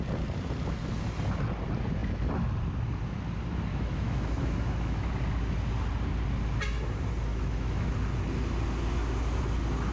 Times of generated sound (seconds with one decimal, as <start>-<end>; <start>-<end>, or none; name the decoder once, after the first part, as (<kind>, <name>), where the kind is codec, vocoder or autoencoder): 3.7-5.1 (autoencoder, DAC-VAE); 7.3-7.9